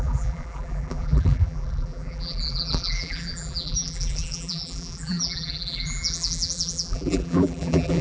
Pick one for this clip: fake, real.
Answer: fake